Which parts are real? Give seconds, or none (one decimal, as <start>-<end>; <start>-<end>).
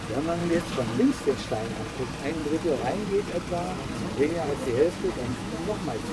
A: 0.0-5.3